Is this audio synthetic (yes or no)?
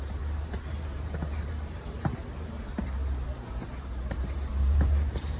yes